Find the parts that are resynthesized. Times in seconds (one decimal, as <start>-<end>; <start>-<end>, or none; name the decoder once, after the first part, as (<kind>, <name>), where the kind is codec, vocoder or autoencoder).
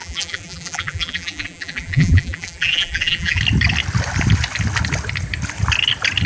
0.0-3.4 (vocoder, BigVGAN v2)